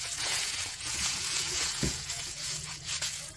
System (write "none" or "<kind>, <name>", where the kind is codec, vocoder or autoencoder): vocoder, Vocos